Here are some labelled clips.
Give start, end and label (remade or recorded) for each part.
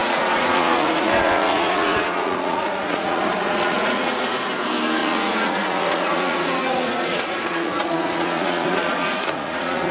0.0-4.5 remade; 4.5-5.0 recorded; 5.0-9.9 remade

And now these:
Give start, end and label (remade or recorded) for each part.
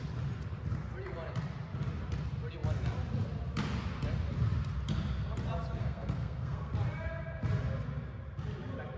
0.0-5.8 recorded; 5.8-6.7 remade; 6.7-9.0 recorded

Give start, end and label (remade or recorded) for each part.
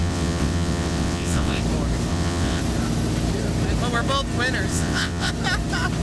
0.0-1.6 remade; 1.6-2.1 recorded; 2.1-2.6 remade; 2.6-4.7 recorded; 4.7-5.3 remade; 5.3-6.0 recorded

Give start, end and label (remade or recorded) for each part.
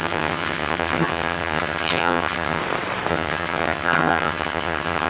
0.0-2.6 remade; 2.6-3.1 recorded; 3.1-5.1 remade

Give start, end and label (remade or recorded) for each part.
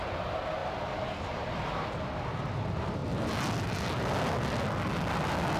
0.0-5.6 recorded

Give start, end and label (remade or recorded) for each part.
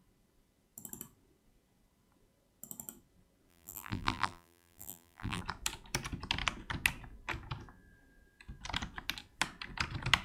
0.0-3.5 recorded; 3.5-5.4 remade; 5.4-10.2 recorded